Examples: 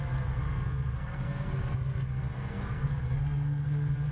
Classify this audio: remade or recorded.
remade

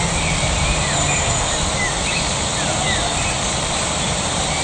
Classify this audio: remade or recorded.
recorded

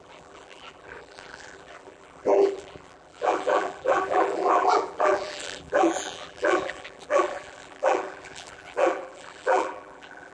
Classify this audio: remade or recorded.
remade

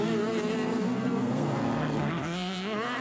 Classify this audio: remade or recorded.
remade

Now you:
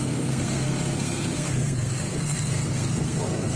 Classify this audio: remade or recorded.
remade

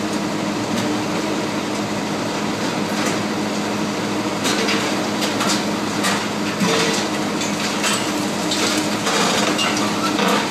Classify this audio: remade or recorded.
recorded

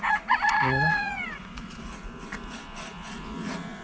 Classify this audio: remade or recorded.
remade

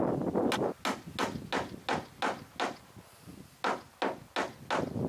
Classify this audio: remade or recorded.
recorded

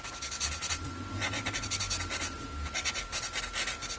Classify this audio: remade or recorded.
recorded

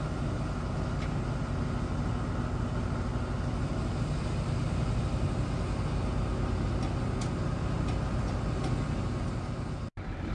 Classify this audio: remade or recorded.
recorded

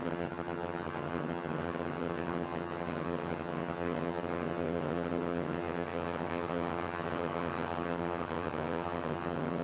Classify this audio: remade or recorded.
remade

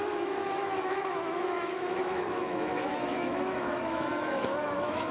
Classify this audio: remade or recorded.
remade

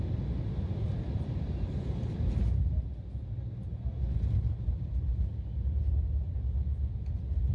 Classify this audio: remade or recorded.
recorded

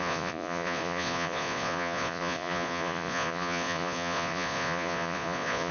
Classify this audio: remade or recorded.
remade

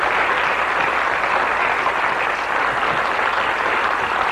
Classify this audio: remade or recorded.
recorded